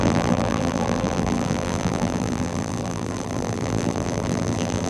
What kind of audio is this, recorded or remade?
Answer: remade